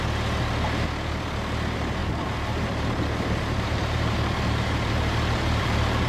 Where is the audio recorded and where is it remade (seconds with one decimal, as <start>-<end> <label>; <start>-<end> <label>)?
0.0-2.0 recorded; 2.0-6.1 remade